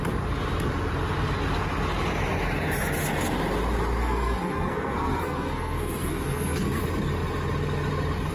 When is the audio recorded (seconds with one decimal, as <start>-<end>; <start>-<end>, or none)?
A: 0.0-4.0; 6.8-8.3